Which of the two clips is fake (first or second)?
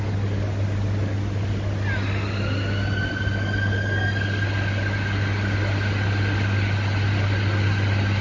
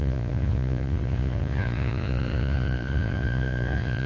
second